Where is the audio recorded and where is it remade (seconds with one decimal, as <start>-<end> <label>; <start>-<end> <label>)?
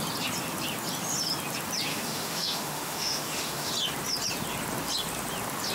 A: 0.0-1.9 recorded; 1.9-3.7 remade; 3.7-5.7 recorded